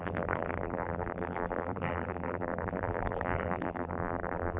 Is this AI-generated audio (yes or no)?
yes